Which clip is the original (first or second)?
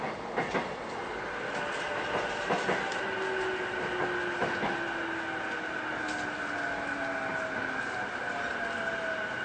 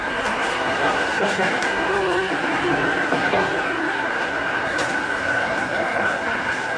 first